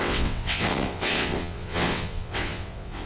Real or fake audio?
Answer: fake